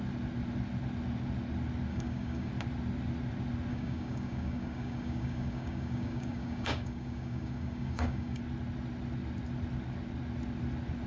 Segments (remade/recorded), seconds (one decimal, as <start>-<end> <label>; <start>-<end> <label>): 0.0-1.9 recorded; 1.9-2.5 remade; 2.5-3.7 recorded; 3.7-8.4 remade; 8.4-11.1 recorded